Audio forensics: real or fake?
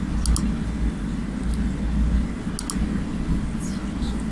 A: real